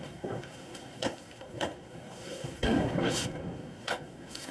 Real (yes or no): no